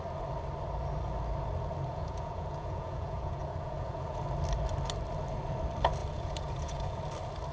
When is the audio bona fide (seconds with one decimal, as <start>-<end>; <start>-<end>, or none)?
0.0-1.9; 4.2-6.0; 7.0-7.5